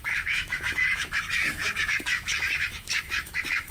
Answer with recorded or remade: remade